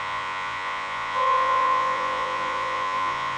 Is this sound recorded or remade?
remade